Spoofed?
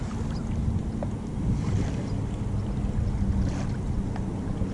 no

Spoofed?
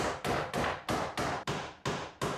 no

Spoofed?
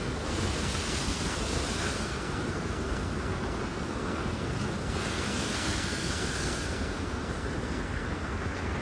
yes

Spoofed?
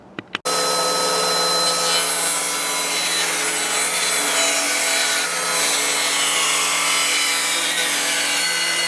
no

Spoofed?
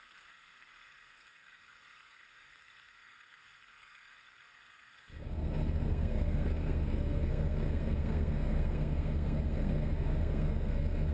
yes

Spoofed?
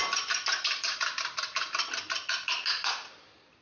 no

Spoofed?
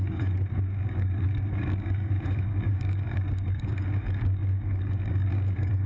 yes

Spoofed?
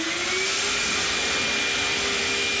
no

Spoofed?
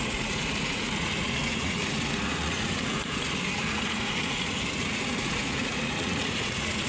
yes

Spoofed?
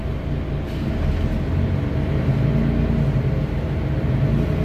no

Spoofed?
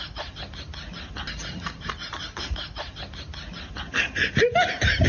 no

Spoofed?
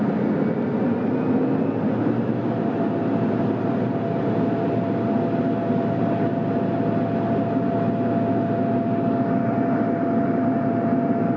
no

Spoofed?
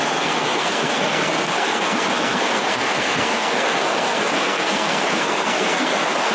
yes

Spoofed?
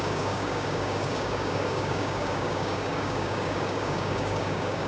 yes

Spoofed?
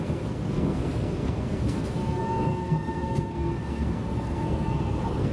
yes